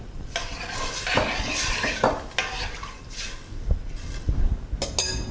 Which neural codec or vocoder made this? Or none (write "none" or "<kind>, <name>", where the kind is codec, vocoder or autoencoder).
none